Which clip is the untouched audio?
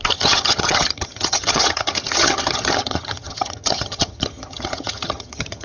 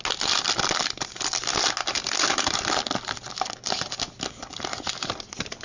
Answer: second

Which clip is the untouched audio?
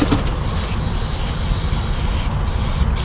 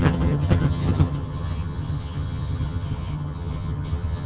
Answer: first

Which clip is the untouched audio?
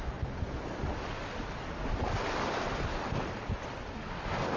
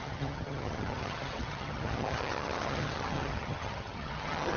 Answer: first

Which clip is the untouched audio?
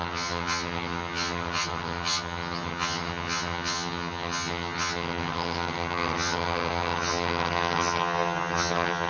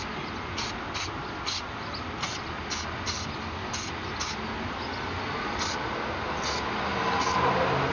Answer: second